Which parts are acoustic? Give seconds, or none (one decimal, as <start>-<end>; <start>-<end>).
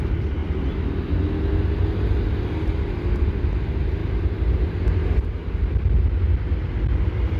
0.0-7.4